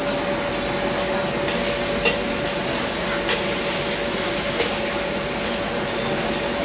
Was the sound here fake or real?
real